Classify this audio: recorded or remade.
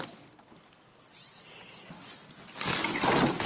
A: recorded